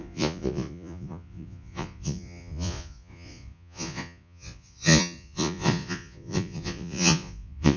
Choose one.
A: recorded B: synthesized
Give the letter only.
B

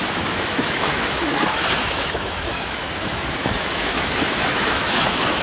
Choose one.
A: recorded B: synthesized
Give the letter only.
B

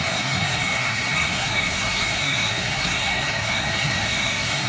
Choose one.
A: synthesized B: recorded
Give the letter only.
A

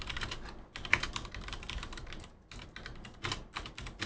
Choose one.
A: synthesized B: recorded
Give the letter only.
B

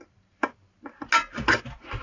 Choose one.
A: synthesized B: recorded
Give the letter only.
B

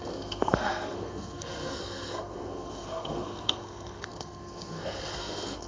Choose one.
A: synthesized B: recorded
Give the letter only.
A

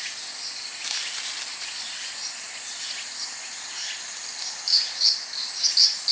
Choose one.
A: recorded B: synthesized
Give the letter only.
A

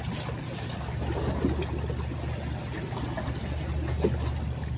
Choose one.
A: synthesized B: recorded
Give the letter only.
B